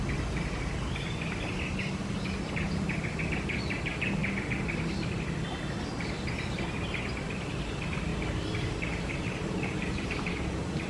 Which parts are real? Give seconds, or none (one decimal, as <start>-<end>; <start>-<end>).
0.0-8.1; 10.2-10.9